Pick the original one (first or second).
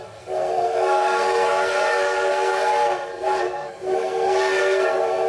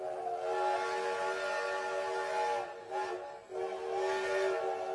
second